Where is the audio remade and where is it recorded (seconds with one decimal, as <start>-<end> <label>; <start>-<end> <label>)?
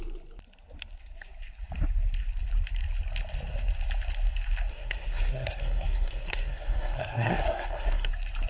0.0-4.7 recorded; 4.7-8.1 remade; 8.1-8.5 recorded